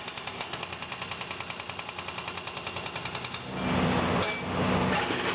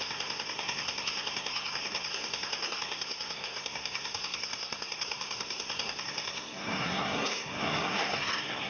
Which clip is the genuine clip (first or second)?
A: first